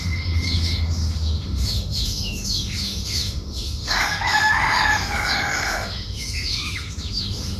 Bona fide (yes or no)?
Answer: no